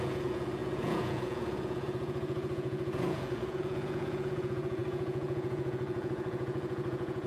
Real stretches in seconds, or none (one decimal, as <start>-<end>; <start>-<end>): none